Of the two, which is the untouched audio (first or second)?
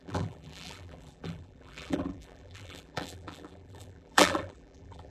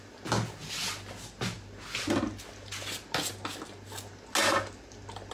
second